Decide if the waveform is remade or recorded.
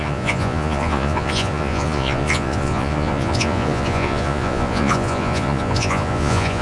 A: remade